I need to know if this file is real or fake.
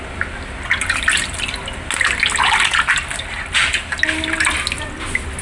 real